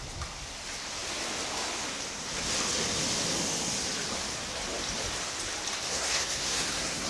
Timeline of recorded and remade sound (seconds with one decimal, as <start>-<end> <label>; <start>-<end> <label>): 0.0-5.9 recorded; 5.9-7.1 remade